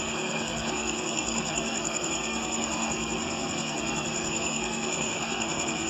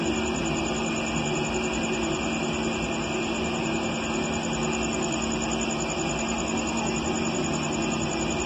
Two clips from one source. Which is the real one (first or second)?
second